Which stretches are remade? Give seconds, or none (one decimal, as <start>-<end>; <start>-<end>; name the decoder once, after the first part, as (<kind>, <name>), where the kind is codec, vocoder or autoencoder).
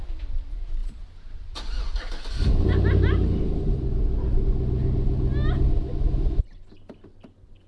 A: none